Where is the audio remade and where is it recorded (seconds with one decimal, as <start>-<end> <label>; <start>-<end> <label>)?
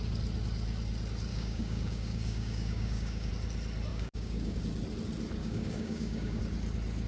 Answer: 0.0-1.3 recorded; 1.3-3.3 remade; 3.3-3.9 recorded; 3.9-4.6 remade; 4.6-5.4 recorded; 5.4-6.4 remade; 6.4-7.1 recorded